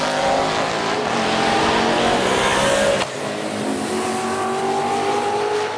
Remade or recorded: recorded